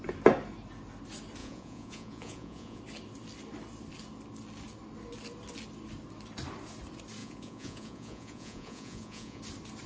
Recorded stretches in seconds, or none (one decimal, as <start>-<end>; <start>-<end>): 0.0-1.4; 2.8-7.2; 9.4-9.9